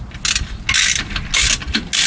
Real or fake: real